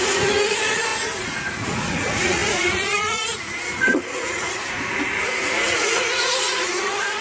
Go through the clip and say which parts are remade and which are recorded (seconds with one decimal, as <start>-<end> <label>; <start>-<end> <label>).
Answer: 0.0-7.2 remade